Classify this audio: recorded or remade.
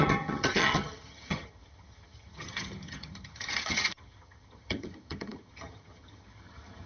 remade